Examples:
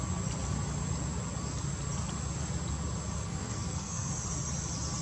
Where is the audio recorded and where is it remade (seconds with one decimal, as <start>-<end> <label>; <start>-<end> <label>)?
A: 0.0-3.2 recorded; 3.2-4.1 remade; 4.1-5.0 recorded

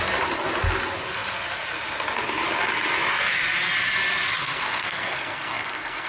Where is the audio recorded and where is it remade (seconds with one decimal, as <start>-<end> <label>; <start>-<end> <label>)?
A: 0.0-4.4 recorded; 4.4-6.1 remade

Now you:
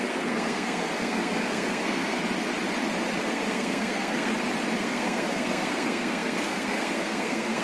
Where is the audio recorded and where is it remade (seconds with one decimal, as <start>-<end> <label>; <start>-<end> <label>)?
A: 0.0-2.2 remade; 2.2-3.2 recorded; 3.2-4.3 remade; 4.3-4.8 recorded; 4.8-7.6 remade

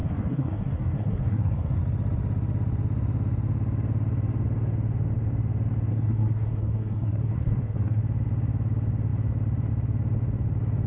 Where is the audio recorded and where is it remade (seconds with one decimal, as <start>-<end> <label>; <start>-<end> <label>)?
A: 0.0-1.8 remade; 1.8-5.9 recorded; 5.9-8.0 remade; 8.0-10.9 recorded